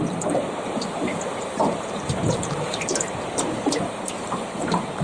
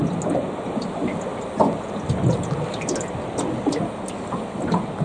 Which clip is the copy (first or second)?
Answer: first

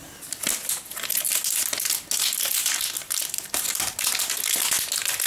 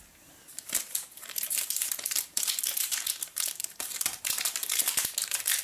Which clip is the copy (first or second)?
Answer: second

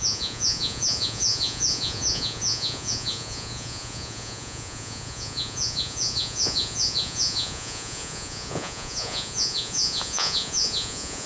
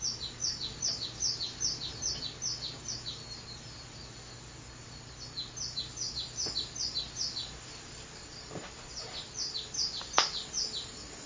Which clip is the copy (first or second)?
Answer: first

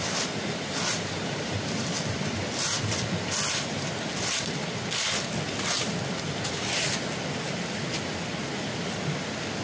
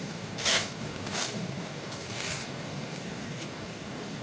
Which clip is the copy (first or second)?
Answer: second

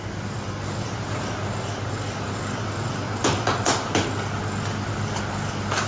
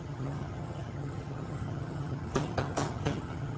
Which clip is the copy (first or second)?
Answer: second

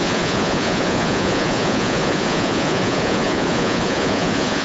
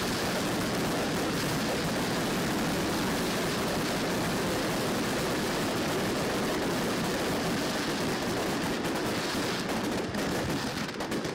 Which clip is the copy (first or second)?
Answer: first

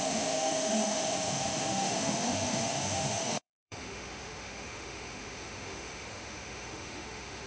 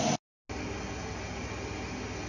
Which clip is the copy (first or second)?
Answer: first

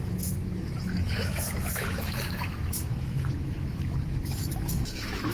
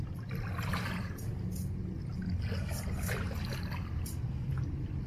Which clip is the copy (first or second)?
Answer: first